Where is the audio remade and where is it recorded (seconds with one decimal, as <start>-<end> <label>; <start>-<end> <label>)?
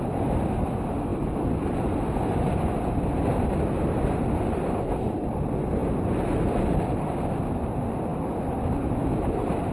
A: 0.0-1.1 recorded; 1.1-3.3 remade; 3.3-9.7 recorded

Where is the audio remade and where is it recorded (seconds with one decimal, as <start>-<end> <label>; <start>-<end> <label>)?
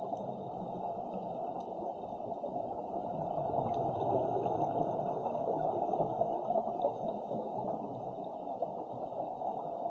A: 0.0-5.2 recorded; 5.2-6.1 remade; 6.1-9.9 recorded